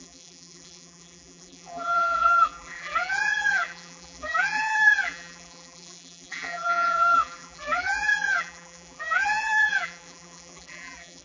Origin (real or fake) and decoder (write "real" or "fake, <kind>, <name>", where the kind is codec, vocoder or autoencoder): fake, vocoder, BigVGAN v2